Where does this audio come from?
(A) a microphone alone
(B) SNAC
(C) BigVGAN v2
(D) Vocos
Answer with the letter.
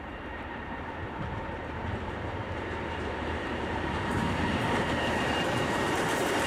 C